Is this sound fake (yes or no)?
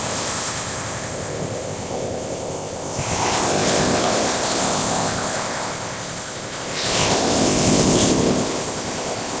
yes